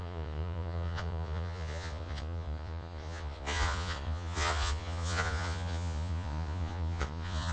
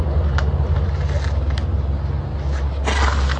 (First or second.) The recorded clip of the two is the second